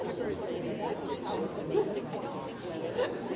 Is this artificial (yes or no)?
no